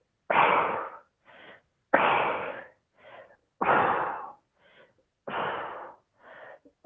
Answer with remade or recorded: recorded